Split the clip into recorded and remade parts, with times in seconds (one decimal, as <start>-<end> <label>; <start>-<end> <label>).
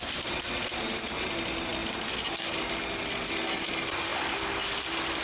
0.0-5.2 recorded